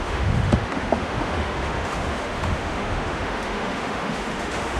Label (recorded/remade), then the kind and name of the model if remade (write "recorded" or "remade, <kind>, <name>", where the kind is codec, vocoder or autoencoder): remade, autoencoder, DAC-VAE